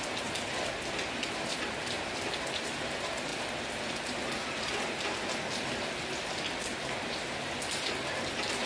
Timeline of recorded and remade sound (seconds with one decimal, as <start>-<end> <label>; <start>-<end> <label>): 0.0-8.7 recorded